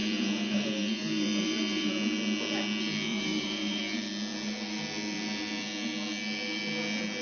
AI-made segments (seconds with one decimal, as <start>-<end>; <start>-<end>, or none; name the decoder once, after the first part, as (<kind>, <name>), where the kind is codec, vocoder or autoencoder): 0.0-1.9 (vocoder, BigVGAN v2); 3.1-3.8